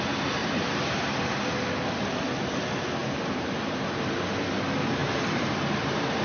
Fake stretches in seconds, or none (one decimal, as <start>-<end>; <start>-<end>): 0.4-1.4; 3.0-4.1; 5.0-6.2